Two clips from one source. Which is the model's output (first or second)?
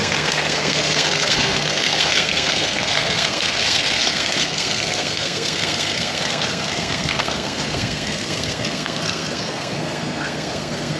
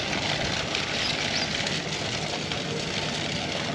first